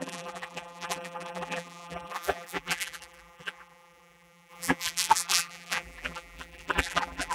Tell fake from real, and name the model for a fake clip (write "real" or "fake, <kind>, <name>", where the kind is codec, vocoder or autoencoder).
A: fake, vocoder, BigVGAN v2